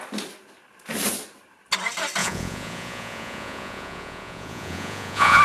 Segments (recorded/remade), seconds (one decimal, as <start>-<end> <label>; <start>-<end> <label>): 0.0-2.2 recorded; 2.2-5.4 remade